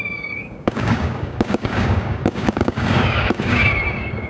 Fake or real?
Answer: fake